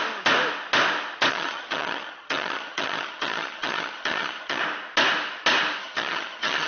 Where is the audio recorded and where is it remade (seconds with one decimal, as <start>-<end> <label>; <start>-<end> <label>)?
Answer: 0.0-1.3 recorded; 1.3-4.6 remade; 4.6-5.8 recorded; 5.8-6.7 remade